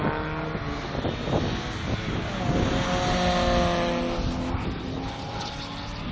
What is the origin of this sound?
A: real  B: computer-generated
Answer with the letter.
A